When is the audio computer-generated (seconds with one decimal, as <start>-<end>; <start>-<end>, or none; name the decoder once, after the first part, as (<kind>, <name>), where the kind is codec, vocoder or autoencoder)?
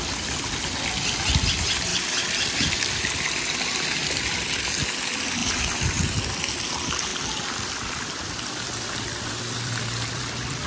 1.9-3.4 (vocoder, BigVGAN v2); 7.1-10.7